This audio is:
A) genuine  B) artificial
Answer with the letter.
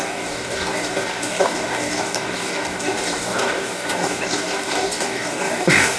B